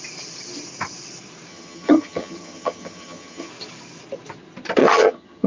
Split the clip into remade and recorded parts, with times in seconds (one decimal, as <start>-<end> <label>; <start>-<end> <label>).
0.0-1.5 recorded; 1.5-3.5 remade; 3.5-4.8 recorded; 4.8-5.5 remade